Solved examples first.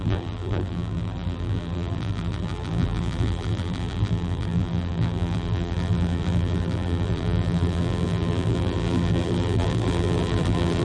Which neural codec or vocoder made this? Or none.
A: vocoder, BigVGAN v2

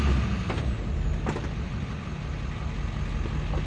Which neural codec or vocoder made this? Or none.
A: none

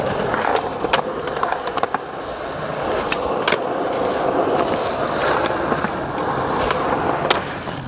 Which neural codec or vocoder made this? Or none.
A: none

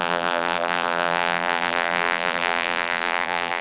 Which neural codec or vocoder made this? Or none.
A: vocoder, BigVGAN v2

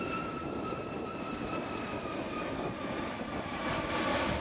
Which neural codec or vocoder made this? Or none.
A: vocoder, BigVGAN v2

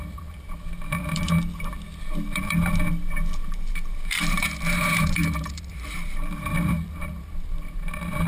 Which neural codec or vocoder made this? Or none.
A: vocoder, BigVGAN v2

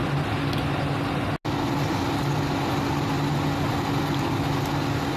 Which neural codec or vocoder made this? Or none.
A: none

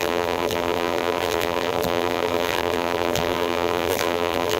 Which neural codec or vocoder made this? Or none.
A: vocoder, BigVGAN v2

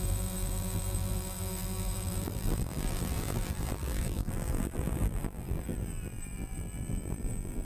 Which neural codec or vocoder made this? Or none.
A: vocoder, BigVGAN v2